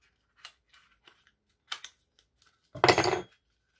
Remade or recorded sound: recorded